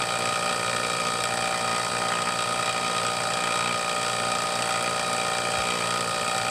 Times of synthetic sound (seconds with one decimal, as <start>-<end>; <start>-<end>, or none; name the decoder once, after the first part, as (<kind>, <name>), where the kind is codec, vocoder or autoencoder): none